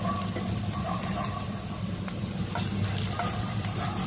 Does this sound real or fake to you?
real